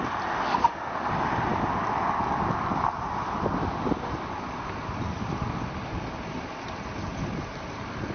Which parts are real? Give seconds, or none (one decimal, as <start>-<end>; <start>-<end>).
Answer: 0.0-0.6; 1.1-8.1